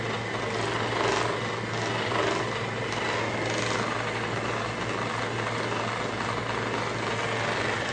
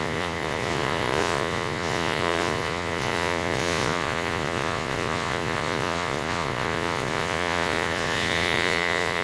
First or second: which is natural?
first